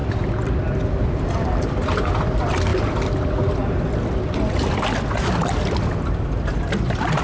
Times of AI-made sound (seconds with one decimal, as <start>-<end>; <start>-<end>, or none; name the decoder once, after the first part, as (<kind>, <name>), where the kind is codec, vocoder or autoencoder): none